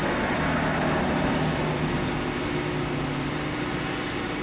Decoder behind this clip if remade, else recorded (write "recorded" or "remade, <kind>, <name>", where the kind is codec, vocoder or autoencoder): recorded